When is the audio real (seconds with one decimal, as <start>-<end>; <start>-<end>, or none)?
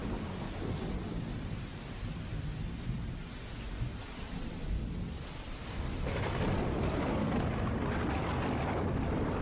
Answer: 0.0-9.4